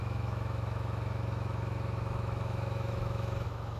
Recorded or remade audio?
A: remade